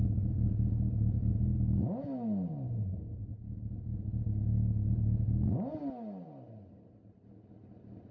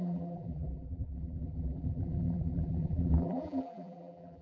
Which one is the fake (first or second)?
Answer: second